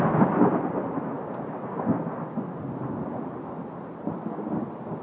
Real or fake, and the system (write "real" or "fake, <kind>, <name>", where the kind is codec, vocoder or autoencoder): real